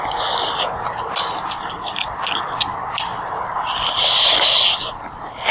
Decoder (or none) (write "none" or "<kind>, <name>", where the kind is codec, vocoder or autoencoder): none